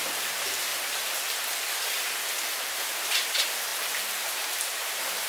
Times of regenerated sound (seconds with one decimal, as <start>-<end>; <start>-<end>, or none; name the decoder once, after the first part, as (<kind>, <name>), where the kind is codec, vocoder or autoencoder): 0.0-0.7 (vocoder, BigVGAN v2); 2.3-5.3